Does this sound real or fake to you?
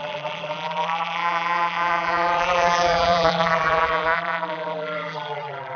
fake